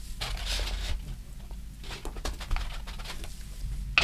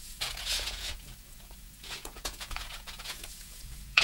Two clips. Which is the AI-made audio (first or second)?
second